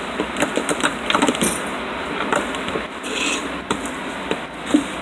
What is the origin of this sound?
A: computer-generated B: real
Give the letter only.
B